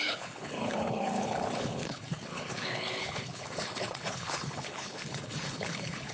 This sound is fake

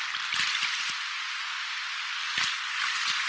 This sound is real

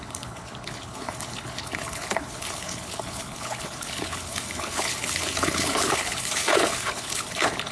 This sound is fake